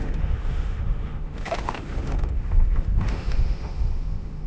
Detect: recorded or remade remade